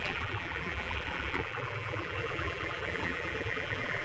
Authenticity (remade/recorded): remade